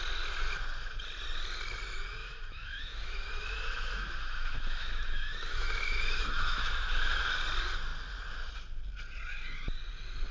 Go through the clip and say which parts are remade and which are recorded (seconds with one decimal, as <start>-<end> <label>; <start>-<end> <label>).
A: 0.0-2.2 recorded; 2.2-7.2 remade; 7.2-10.3 recorded